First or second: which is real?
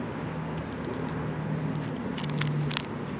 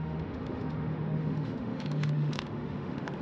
first